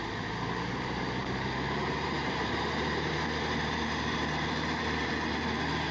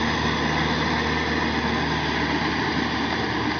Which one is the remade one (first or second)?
first